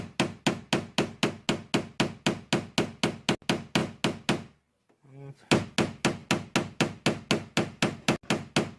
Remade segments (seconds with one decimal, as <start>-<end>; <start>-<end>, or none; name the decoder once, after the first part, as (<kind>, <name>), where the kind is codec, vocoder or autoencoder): none

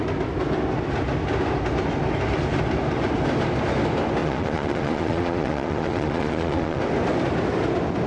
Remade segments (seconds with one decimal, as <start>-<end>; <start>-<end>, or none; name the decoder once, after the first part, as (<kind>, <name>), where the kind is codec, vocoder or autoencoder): 4.2-6.8 (vocoder, Vocos)

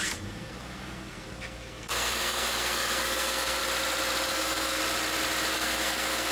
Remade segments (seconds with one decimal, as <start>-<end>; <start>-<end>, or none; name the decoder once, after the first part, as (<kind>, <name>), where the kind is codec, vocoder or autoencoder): 0.0-3.6 (codec, SNAC); 4.3-4.8; 5.5-6.3

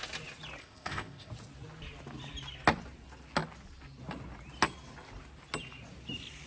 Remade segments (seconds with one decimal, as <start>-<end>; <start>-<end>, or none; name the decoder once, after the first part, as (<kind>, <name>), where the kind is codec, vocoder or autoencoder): 0.6-1.3 (codec, ZipCodec)

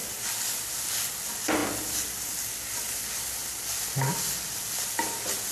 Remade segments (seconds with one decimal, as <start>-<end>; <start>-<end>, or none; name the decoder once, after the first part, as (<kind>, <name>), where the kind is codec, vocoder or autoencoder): 0.0-1.1 (vocoder, BigVGAN v2); 1.6-4.9

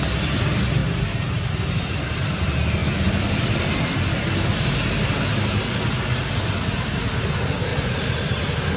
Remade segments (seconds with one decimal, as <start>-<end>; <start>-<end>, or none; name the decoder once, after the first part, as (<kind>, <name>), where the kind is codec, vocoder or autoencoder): 2.8-4.6 (vocoder, BigVGAN v2)

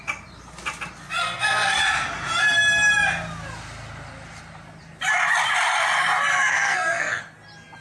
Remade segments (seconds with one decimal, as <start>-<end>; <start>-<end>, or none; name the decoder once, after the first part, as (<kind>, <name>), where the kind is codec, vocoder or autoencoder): 1.2-1.8 (codec, SNAC); 6.5-7.2

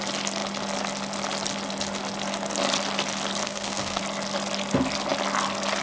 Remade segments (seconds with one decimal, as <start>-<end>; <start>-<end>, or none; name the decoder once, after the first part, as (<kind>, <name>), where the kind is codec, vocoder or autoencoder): 3.4-4.0 (codec, SNAC)